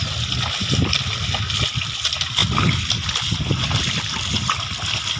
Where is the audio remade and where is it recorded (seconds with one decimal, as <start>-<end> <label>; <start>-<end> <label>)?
0.0-5.2 recorded